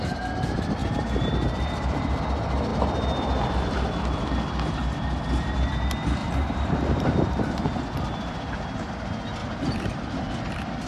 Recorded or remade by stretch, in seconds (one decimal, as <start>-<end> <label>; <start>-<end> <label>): 0.0-0.8 recorded; 0.8-2.2 remade; 2.2-6.2 recorded; 6.2-8.9 remade; 8.9-9.4 recorded; 9.4-10.0 remade; 10.0-10.9 recorded